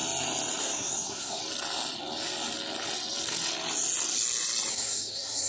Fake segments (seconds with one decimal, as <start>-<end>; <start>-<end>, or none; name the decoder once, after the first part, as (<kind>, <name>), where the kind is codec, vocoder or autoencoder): 0.6-1.4 (codec, SNAC); 4.7-5.5